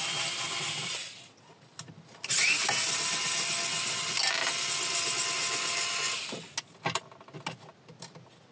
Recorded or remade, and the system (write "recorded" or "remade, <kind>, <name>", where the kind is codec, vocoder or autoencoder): recorded